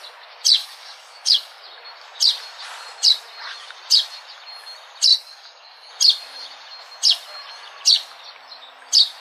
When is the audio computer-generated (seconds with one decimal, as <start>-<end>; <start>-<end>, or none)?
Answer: 0.6-1.6; 5.1-5.9